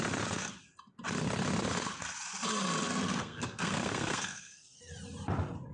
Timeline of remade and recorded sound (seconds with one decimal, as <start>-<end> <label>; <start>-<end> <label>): 0.0-2.9 recorded; 2.9-4.9 remade; 4.9-5.7 recorded